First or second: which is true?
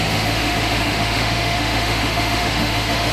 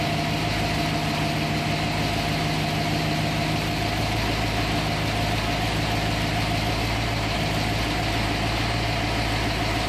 second